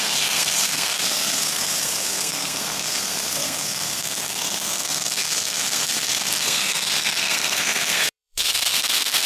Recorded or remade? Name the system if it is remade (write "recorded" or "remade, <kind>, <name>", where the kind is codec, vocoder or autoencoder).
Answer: remade, codec, SNAC